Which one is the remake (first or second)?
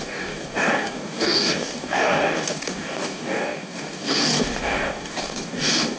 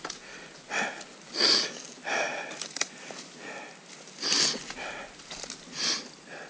first